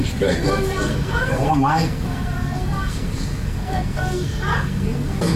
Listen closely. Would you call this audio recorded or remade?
remade